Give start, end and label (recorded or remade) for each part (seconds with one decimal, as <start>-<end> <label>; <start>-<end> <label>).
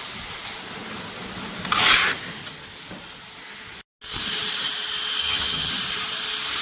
0.0-5.2 recorded; 5.2-5.7 remade; 5.7-6.6 recorded